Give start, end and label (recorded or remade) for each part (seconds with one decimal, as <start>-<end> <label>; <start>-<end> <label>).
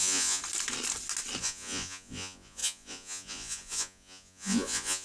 0.0-0.4 remade; 0.4-1.4 recorded; 1.4-5.0 remade